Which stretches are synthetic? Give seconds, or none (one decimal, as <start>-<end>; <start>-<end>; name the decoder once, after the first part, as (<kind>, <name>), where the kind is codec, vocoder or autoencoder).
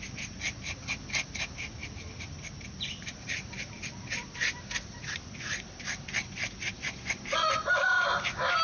none